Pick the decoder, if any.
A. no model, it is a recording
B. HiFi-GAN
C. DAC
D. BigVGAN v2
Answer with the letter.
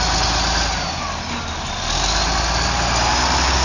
A